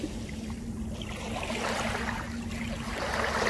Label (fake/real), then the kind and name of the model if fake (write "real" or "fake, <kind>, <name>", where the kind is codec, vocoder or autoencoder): real